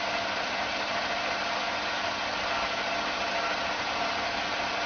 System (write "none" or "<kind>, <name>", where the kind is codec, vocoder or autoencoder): none